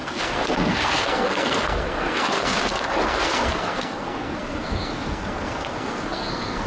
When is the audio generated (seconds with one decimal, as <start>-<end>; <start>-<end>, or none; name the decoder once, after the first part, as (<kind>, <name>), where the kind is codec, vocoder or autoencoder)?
0.0-6.7 (codec, SNAC)